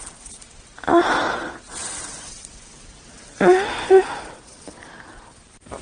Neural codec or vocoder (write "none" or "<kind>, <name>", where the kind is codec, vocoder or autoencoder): none